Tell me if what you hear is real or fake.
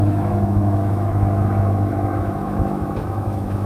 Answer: fake